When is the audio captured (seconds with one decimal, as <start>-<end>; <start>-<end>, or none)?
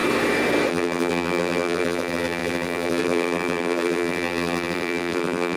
0.0-0.7